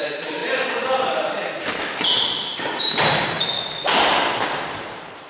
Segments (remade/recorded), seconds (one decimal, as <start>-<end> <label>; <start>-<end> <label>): 0.0-3.5 remade; 3.5-4.5 recorded; 4.5-5.3 remade